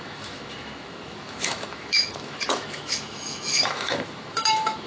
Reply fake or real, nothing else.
fake